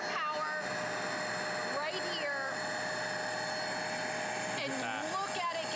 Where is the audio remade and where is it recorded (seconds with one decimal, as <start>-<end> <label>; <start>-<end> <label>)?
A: 0.0-5.8 recorded